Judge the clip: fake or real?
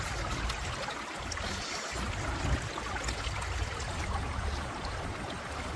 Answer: real